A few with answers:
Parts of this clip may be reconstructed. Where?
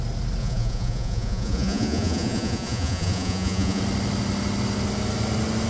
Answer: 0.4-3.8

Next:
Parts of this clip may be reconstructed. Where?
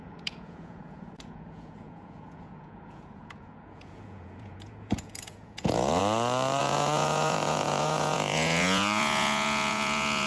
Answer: 0.0-6.0; 6.6-10.3